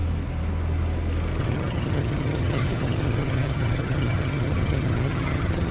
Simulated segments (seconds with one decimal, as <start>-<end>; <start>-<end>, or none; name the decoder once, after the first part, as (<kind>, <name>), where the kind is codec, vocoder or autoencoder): 1.4-5.7 (vocoder, HiFi-GAN)